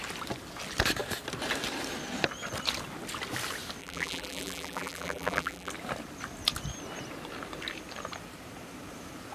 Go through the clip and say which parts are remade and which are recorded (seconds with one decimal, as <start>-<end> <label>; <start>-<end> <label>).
0.0-3.8 recorded; 3.8-5.7 remade; 5.7-9.3 recorded

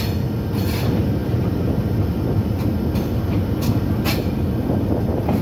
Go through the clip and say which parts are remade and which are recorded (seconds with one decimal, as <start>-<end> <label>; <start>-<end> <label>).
0.0-5.4 recorded

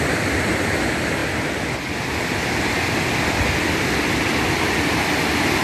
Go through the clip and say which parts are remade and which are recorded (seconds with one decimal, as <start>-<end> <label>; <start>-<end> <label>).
0.0-5.6 recorded

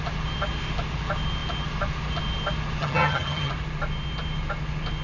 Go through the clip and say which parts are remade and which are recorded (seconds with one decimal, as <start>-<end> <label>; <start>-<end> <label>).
0.0-2.8 recorded; 2.8-3.5 remade; 3.5-5.0 recorded

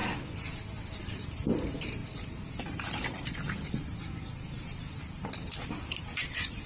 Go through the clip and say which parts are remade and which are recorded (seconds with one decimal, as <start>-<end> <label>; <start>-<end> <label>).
0.0-1.1 recorded; 1.1-6.7 remade

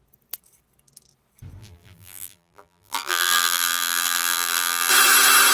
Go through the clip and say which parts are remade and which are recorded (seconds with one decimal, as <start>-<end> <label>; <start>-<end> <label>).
0.0-1.6 recorded; 1.6-4.9 remade; 4.9-5.5 recorded